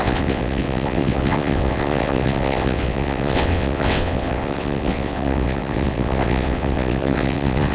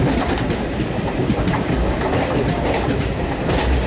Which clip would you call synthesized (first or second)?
first